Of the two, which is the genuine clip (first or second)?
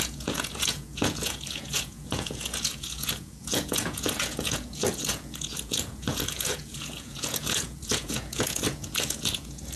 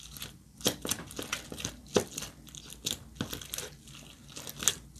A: second